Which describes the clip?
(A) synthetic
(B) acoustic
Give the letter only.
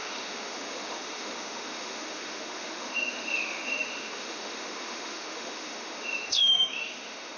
A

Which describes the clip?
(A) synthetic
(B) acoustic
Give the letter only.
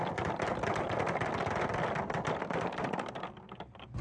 B